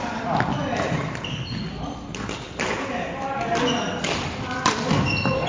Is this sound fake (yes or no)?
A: no